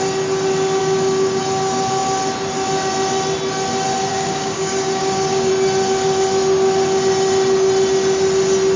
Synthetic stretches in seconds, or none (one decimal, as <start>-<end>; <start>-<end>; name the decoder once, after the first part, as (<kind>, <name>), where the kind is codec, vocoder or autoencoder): 0.8-1.4 (codec, DAC); 4.1-5.5